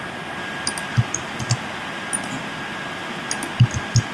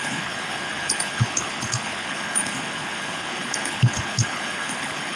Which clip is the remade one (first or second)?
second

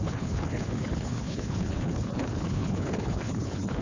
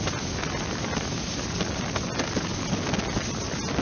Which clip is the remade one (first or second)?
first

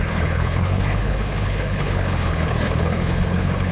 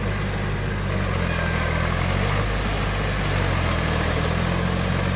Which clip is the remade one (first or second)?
first